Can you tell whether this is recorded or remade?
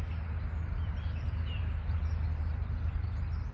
recorded